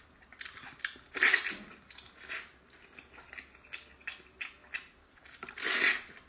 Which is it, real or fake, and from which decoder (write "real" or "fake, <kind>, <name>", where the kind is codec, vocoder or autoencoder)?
real